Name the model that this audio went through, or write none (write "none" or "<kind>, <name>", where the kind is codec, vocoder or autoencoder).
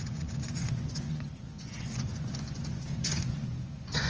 vocoder, Vocos